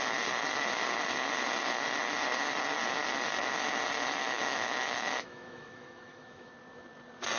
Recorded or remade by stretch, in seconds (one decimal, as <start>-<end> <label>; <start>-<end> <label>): 0.0-4.2 recorded; 4.2-6.5 remade; 6.5-7.4 recorded